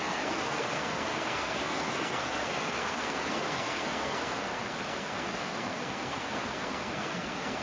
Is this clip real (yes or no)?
no